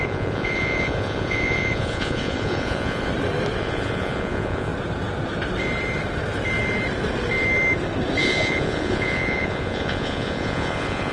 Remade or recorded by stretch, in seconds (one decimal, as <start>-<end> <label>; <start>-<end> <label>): 0.0-3.1 remade; 3.1-3.6 recorded; 3.6-4.7 remade; 4.7-8.2 recorded; 8.2-11.1 remade